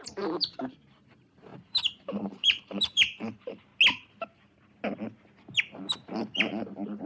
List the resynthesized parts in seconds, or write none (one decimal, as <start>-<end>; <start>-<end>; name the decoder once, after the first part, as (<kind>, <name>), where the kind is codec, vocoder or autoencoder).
0.0-3.7 (vocoder, BigVGAN v2); 5.6-7.1